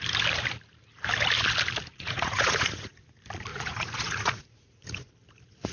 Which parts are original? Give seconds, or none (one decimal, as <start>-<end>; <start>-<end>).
0.0-1.9; 3.0-3.5; 5.1-5.7